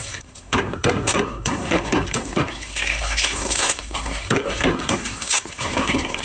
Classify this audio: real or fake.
fake